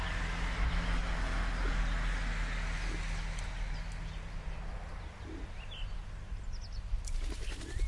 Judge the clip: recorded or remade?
recorded